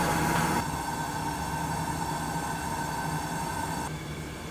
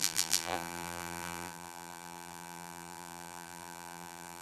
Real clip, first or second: first